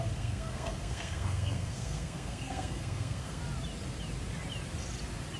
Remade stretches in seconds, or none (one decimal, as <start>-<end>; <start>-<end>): 0.0-3.4